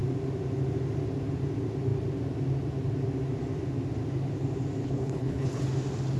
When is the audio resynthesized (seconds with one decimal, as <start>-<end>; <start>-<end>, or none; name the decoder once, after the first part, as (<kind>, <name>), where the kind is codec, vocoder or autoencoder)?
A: 4.8-5.6 (codec, HILCodec)